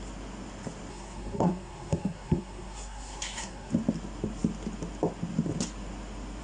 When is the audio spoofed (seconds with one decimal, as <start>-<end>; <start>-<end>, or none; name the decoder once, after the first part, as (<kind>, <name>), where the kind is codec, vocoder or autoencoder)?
0.9-3.7 (codec, SNAC)